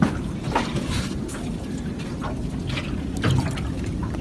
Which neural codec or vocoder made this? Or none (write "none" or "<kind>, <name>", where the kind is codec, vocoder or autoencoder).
none